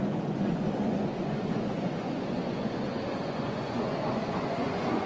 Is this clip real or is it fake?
fake